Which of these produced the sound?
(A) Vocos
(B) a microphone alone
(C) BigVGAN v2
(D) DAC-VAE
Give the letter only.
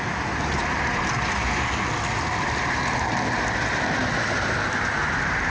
B